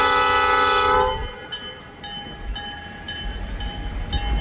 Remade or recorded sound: recorded